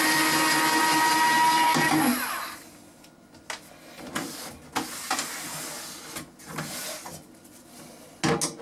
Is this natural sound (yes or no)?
yes